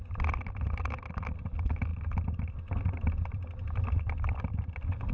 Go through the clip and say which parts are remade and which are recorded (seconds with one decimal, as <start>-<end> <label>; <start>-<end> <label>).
0.0-5.1 recorded